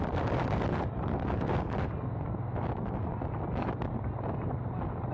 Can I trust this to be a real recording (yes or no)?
yes